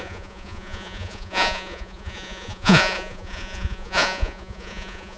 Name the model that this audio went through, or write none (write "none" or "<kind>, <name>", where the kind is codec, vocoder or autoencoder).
vocoder, Vocos